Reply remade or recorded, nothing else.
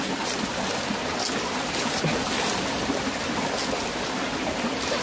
recorded